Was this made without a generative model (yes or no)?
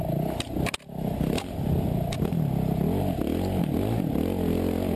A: yes